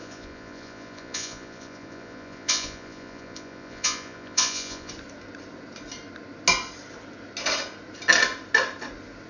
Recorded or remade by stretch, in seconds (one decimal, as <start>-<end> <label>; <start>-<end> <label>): 0.0-4.9 remade; 4.9-9.3 recorded